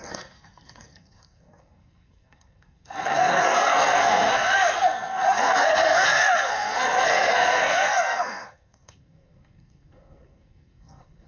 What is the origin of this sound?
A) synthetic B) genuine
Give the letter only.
A